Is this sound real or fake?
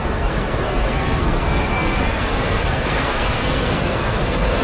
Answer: fake